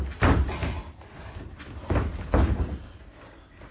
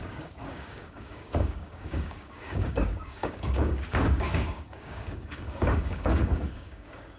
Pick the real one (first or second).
first